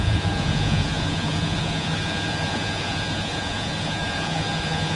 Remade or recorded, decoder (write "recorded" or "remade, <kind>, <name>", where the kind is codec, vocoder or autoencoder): remade, vocoder, Vocos